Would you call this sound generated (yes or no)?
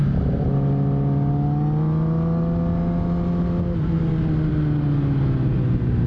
no